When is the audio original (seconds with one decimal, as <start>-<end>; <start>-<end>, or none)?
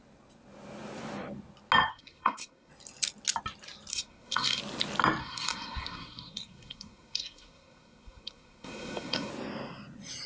0.0-1.9; 2.7-3.9; 4.6-5.2; 9.3-10.3